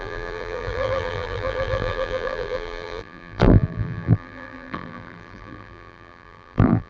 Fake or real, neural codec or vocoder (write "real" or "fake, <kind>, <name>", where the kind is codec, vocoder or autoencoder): fake, vocoder, BigVGAN v2